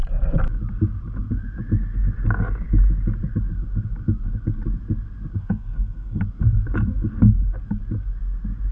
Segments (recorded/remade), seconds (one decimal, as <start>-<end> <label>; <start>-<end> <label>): 0.0-5.4 recorded; 5.4-6.2 remade; 6.2-8.7 recorded